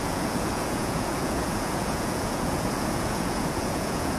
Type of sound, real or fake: fake